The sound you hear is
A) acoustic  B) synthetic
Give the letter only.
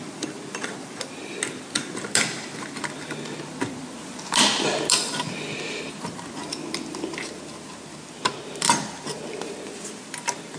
A